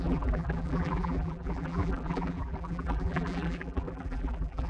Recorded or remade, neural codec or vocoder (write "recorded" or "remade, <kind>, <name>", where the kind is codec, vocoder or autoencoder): remade, vocoder, BigVGAN v2